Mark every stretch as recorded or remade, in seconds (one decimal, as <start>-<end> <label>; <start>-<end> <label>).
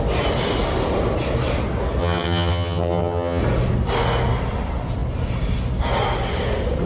0.0-2.0 recorded; 2.0-3.4 remade; 3.4-6.9 recorded